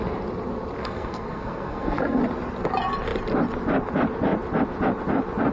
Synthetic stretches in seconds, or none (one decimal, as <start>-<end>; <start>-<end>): 0.8-2.2